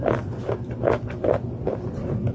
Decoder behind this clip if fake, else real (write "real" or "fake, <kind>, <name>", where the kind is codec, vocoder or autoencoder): real